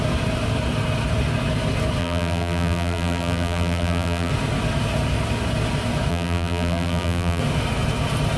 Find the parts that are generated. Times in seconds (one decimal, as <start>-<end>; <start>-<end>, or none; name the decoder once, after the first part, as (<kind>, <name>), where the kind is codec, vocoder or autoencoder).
2.0-4.3 (vocoder, BigVGAN v2); 6.1-7.4